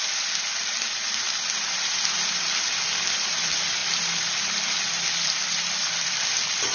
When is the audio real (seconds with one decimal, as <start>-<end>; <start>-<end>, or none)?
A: 3.8-5.2